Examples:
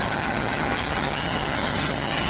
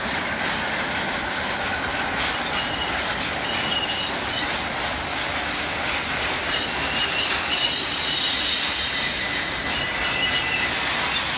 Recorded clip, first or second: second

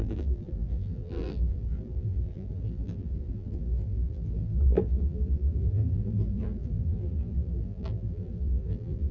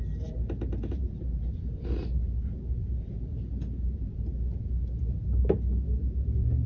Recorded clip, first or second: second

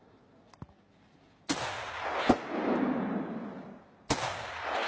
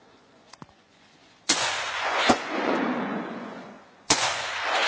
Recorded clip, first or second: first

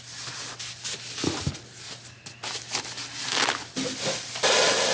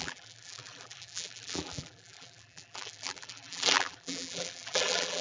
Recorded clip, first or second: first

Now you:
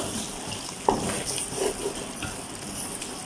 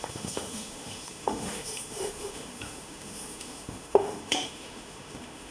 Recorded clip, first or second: first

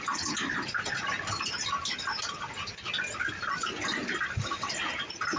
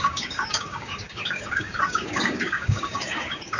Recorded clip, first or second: first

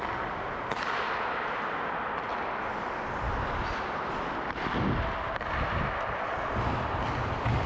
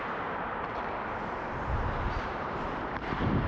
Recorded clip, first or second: first